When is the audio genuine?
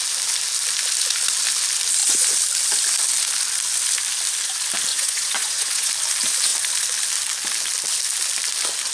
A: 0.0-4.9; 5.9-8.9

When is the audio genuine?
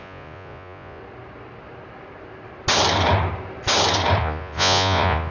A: 1.0-4.2